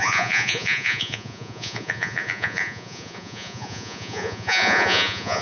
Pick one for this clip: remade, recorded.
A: remade